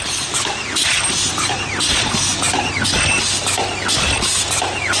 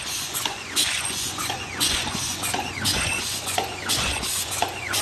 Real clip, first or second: first